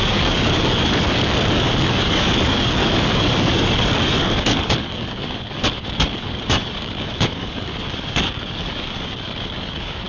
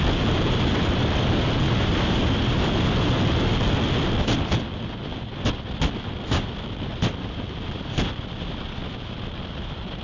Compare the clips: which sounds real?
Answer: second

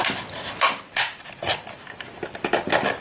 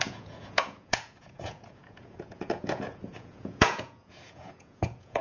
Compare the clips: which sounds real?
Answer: first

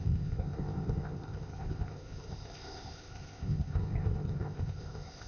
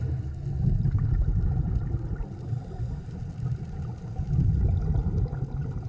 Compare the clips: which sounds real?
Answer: second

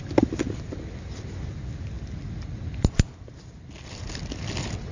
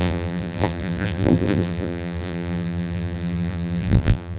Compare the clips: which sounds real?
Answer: first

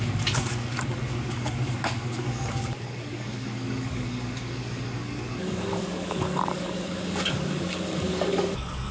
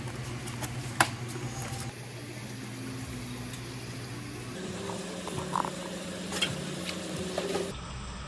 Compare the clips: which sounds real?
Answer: second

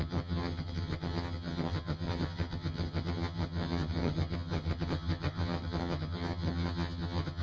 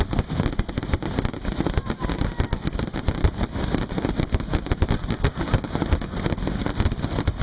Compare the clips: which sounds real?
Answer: second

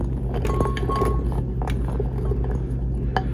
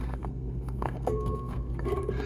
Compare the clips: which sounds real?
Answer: first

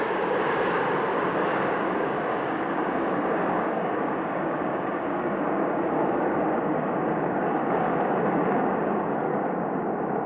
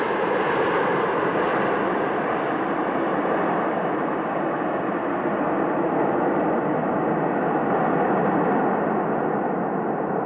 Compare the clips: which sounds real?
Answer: second